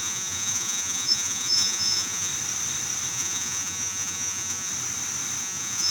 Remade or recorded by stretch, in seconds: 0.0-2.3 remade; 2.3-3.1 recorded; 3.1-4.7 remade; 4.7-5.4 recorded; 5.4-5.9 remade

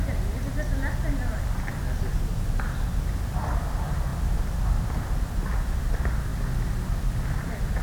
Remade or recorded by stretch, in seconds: 0.0-7.8 recorded

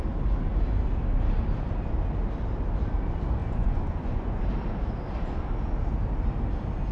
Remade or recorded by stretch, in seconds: 0.0-3.4 recorded; 3.4-4.4 remade; 4.4-6.9 recorded

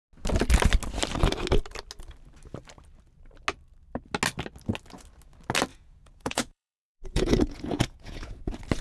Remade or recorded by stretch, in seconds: 0.0-5.7 recorded; 5.7-8.4 remade; 8.4-8.8 recorded

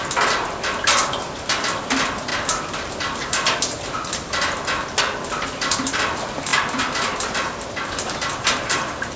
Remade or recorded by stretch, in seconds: 0.0-9.2 recorded